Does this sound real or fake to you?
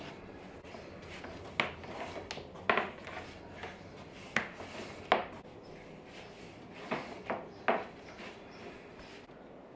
real